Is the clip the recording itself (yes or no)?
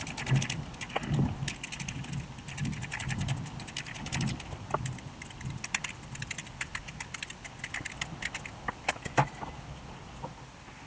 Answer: yes